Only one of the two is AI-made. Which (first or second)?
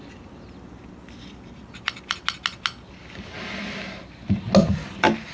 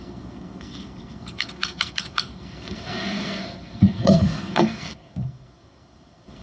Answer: second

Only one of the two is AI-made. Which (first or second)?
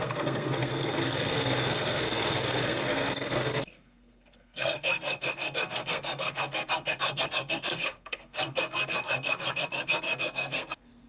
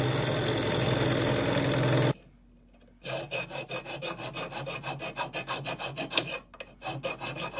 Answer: first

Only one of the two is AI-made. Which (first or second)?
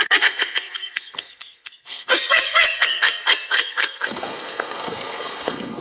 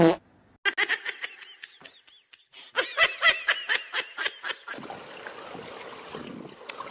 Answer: first